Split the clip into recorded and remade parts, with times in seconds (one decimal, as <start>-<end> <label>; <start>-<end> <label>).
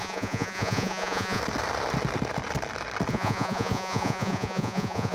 0.0-1.4 remade; 1.4-3.1 recorded; 3.1-5.1 remade